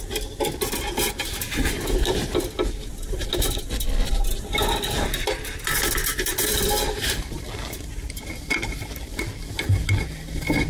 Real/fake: real